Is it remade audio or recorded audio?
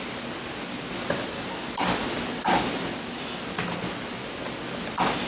recorded